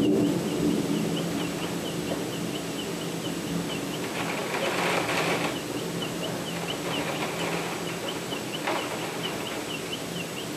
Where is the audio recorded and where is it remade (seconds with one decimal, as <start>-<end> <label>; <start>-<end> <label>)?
0.0-10.6 recorded